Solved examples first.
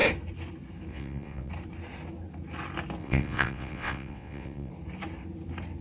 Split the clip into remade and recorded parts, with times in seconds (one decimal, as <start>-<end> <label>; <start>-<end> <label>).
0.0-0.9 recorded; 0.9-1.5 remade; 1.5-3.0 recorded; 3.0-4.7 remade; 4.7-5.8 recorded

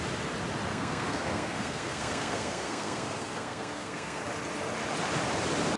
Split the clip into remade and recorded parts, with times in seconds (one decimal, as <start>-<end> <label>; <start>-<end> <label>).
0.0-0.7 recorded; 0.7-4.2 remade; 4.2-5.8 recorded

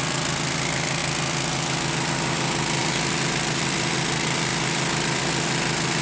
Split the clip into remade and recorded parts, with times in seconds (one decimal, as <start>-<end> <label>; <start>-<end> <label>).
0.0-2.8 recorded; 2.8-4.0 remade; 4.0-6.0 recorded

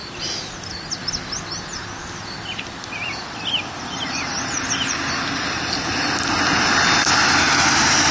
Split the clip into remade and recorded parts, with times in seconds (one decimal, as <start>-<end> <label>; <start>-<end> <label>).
0.0-8.1 recorded

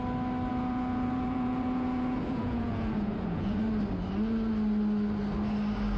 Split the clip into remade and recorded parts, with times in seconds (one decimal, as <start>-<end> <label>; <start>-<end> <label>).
0.0-0.5 recorded; 0.5-3.6 remade; 3.6-6.0 recorded

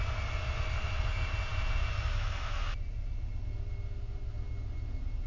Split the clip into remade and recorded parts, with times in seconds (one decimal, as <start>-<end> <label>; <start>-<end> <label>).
0.0-5.3 recorded

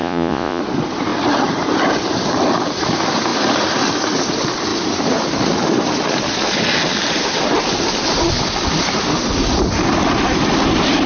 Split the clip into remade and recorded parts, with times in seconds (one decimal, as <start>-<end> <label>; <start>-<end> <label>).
0.0-0.6 remade; 0.6-11.1 recorded